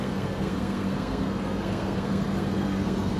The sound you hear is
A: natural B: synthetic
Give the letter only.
B